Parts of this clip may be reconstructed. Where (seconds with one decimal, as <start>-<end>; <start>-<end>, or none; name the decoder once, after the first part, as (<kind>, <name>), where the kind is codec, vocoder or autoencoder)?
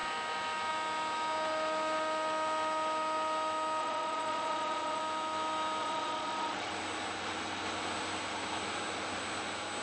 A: 3.8-5.0 (vocoder, Vocos); 5.8-6.7